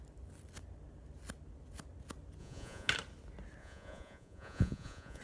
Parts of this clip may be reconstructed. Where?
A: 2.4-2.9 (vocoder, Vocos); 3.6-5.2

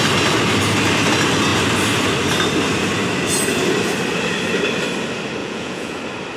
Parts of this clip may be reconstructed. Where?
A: 5.4-6.0 (vocoder, Vocos)

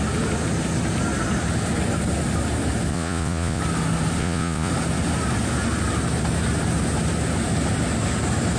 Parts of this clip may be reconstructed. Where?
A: 2.9-3.6 (vocoder, Vocos); 4.2-4.7

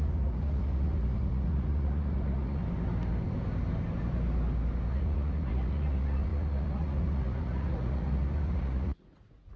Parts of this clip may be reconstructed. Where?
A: 0.0-2.6 (vocoder, Vocos); 4.9-9.6

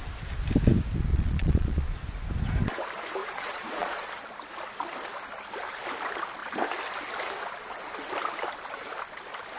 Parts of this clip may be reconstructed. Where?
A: 1.1-2.0 (vocoder, Vocos); 3.2-4.1

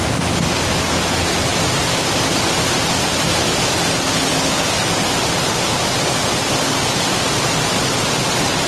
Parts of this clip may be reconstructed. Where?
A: none

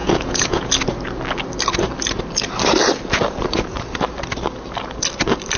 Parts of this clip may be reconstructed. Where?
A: 0.0-0.7 (vocoder, Vocos)